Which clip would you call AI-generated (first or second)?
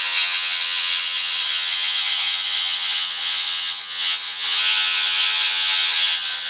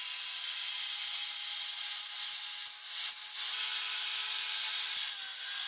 first